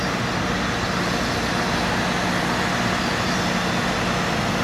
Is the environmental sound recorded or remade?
recorded